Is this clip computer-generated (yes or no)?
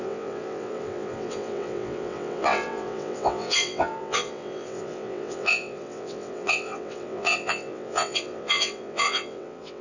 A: yes